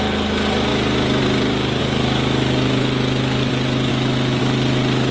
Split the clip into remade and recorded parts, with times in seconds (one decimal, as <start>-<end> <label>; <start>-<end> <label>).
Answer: 0.0-0.7 recorded; 0.7-1.2 remade; 1.2-1.8 recorded; 1.8-3.5 remade; 3.5-3.9 recorded; 3.9-4.4 remade; 4.4-5.1 recorded